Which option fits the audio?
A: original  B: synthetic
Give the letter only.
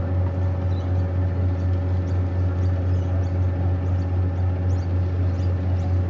A